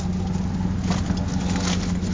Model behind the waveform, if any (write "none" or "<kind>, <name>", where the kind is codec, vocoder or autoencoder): none